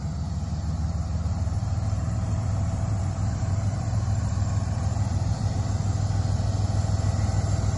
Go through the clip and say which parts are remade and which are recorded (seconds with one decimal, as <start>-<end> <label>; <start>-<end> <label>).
0.0-1.3 recorded; 1.3-5.6 remade; 5.6-7.8 recorded